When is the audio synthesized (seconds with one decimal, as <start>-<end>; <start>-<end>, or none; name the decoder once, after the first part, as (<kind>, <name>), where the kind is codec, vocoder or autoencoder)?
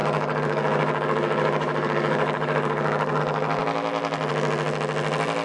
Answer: 0.0-3.2 (codec, DAC)